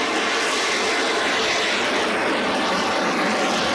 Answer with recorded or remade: recorded